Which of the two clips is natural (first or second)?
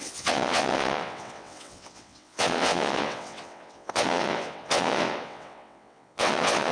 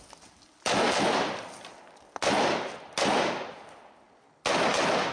second